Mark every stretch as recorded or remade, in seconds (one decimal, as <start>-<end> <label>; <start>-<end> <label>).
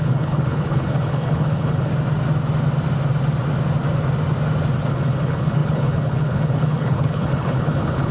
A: 0.0-1.9 remade; 1.9-4.9 recorded; 4.9-8.1 remade